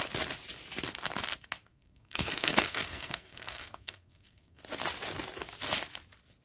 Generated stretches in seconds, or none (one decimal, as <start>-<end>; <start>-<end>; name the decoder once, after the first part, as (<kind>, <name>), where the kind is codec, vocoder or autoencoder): 1.7-4.6 (codec, SNAC)